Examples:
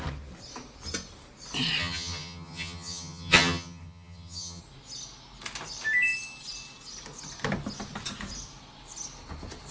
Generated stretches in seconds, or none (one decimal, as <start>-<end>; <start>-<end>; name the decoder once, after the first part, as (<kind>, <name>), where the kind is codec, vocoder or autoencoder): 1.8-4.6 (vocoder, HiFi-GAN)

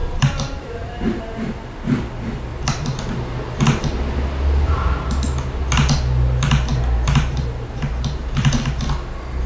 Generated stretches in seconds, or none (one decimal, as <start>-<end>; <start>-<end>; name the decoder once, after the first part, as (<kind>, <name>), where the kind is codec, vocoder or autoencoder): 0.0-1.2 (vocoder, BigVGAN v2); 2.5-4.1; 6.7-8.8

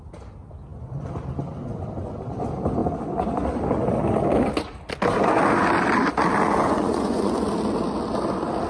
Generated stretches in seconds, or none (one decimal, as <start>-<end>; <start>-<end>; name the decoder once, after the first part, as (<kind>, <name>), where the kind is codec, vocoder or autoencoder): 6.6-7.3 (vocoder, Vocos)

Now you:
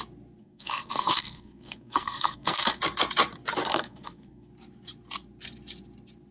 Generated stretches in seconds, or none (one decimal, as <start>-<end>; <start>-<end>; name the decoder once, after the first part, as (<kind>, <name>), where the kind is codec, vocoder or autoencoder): 0.4-2.8 (codec, SNAC); 3.6-4.5

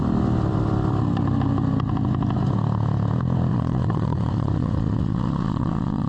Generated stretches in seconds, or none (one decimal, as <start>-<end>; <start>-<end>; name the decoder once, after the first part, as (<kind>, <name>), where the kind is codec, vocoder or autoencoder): 3.5-6.1 (vocoder, Vocos)

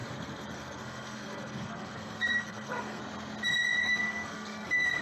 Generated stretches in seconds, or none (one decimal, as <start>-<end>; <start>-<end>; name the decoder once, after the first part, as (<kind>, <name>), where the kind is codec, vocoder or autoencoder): 0.0-3.0 (codec, SNAC); 3.8-5.0

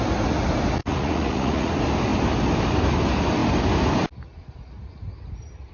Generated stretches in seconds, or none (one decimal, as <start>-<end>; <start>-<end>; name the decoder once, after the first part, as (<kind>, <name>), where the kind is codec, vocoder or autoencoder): 0.8-1.7 (vocoder, Vocos)